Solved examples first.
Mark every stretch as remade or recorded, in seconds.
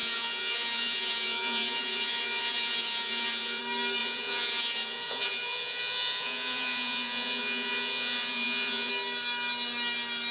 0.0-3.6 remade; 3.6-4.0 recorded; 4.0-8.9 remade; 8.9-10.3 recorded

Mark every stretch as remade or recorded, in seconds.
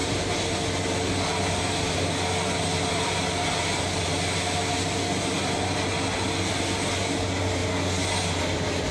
0.0-8.9 recorded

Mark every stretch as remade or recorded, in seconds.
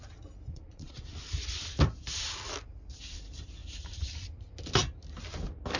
0.0-0.5 recorded; 0.5-1.1 remade; 1.1-5.8 recorded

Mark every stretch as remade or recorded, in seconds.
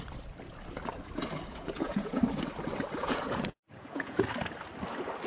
0.0-1.5 recorded; 1.5-2.2 remade; 2.2-3.0 recorded; 3.0-4.2 remade; 4.2-5.3 recorded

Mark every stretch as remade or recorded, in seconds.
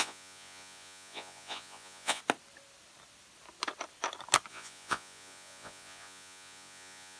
0.0-2.2 remade; 2.2-4.5 recorded; 4.5-7.2 remade